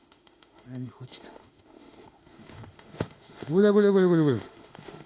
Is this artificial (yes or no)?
yes